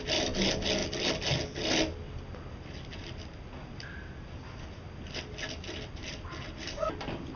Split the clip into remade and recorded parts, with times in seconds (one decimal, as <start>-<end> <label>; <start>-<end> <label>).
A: 0.0-7.4 recorded